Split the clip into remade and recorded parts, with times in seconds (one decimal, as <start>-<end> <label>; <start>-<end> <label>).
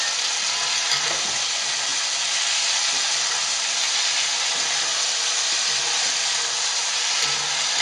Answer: 0.0-7.8 recorded